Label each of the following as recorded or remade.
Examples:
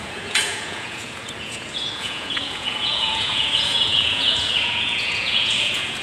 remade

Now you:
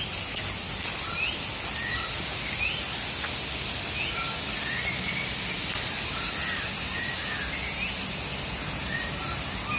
recorded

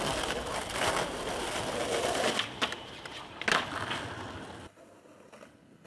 recorded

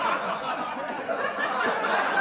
remade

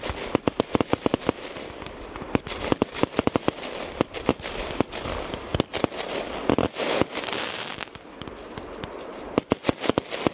recorded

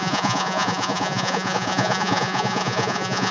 remade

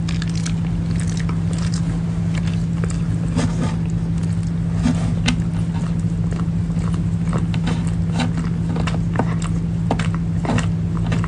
recorded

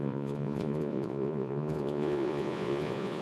remade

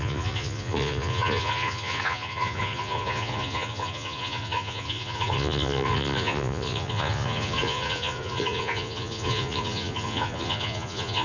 remade